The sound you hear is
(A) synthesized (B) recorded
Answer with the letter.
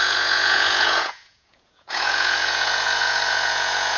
A